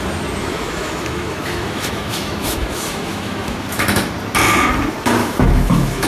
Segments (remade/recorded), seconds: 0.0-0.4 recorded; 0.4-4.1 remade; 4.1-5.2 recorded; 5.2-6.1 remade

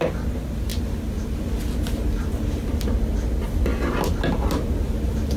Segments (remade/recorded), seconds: 0.0-5.4 recorded

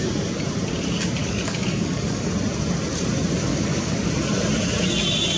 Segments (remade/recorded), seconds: 0.0-1.2 recorded; 1.2-2.3 remade; 2.3-3.5 recorded; 3.5-4.1 remade; 4.1-5.4 recorded

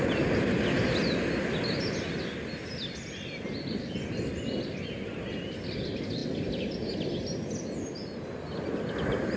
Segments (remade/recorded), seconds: 0.0-9.4 recorded

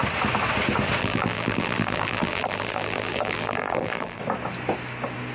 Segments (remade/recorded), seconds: 0.0-1.0 recorded; 1.0-4.2 remade; 4.2-5.3 recorded

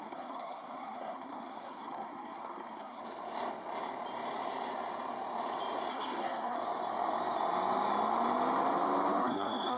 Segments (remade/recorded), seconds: 0.0-3.0 remade; 3.0-5.9 recorded; 5.9-6.6 remade; 6.6-9.2 recorded; 9.2-9.8 remade

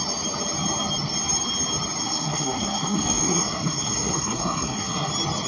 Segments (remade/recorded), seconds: 0.0-2.0 recorded; 2.0-5.1 remade; 5.1-5.5 recorded